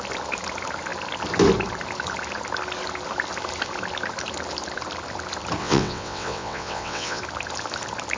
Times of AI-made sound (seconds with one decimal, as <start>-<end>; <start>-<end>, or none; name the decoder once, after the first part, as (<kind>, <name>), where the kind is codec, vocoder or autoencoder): 5.6-7.2 (vocoder, WaveNeXt)